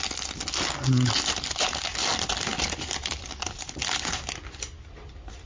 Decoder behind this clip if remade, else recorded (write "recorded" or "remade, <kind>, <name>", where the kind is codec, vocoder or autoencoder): recorded